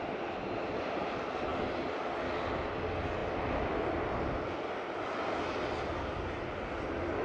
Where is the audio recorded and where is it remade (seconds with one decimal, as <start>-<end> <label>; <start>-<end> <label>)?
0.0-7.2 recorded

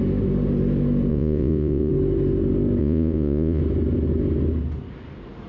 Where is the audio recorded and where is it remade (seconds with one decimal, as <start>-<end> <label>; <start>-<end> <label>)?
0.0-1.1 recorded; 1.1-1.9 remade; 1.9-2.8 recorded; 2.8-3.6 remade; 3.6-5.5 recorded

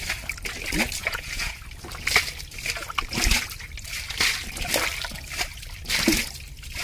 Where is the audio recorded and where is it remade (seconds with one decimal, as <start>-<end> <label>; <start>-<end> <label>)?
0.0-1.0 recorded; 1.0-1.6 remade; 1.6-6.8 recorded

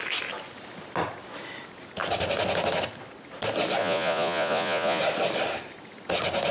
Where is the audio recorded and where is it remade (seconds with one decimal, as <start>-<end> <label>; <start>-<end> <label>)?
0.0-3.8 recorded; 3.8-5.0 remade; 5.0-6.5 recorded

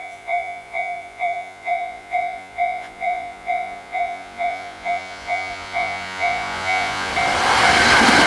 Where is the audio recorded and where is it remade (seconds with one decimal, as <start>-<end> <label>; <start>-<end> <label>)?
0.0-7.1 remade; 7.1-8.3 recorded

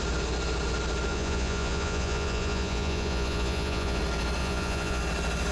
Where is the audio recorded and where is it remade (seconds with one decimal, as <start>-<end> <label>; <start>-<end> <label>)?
0.0-1.1 recorded; 1.1-4.0 remade; 4.0-4.4 recorded; 4.4-5.0 remade; 5.0-5.5 recorded

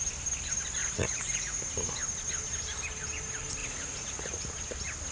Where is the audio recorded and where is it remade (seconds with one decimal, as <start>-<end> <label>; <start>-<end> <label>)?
0.0-0.8 recorded; 0.8-1.6 remade; 1.6-3.6 recorded; 3.6-4.5 remade; 4.5-5.1 recorded